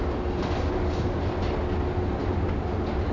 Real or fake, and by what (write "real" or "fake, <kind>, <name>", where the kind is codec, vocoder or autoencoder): real